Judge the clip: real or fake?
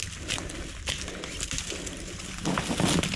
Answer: real